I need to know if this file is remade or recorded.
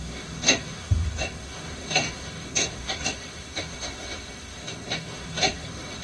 remade